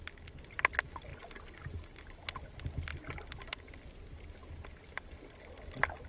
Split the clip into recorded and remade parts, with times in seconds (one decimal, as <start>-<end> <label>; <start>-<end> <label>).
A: 0.0-6.1 recorded